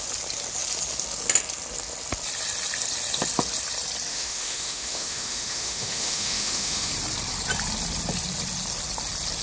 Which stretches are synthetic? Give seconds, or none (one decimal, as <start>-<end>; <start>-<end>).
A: 4.1-6.9

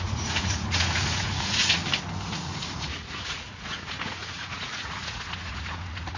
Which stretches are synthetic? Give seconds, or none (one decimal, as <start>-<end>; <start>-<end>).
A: 0.0-1.8; 2.3-6.2

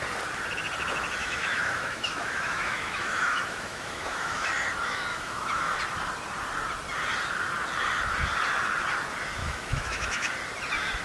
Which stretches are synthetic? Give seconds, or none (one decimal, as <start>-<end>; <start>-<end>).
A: 1.2-4.5; 5.1-5.8; 9.4-10.3

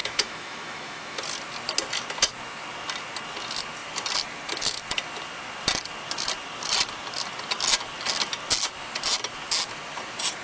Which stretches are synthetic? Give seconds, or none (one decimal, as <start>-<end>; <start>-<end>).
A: 0.0-1.2

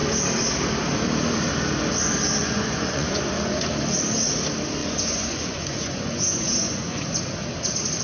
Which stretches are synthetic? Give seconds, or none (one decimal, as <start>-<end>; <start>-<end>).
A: 2.4-3.7; 4.8-7.2

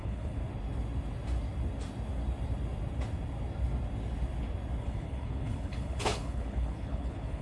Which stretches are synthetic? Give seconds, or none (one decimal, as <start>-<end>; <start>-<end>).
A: 0.0-0.4; 4.8-7.4

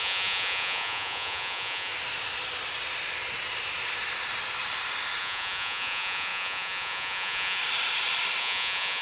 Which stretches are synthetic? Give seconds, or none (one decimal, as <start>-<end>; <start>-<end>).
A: 0.0-1.9; 5.2-7.6; 8.4-9.0